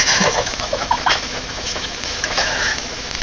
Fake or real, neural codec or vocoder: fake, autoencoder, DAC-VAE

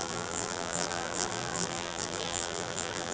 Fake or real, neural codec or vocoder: fake, vocoder, BigVGAN v2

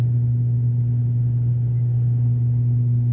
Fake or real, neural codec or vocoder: real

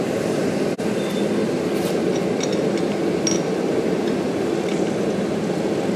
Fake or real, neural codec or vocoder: fake, vocoder, BigVGAN v2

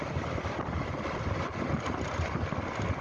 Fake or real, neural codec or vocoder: real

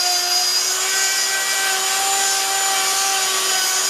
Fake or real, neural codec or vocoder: real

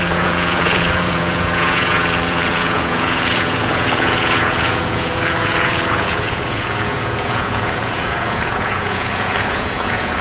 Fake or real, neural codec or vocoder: fake, vocoder, Vocos